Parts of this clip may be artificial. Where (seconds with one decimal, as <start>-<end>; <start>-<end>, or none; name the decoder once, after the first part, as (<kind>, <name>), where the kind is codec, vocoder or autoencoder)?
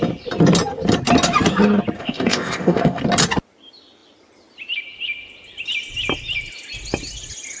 2.0-3.0 (codec, ZipCodec)